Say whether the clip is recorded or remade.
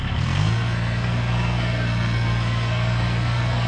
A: remade